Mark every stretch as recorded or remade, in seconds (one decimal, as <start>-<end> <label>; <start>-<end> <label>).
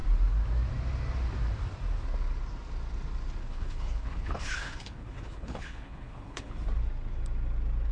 0.0-3.4 recorded; 3.4-6.5 remade; 6.5-7.9 recorded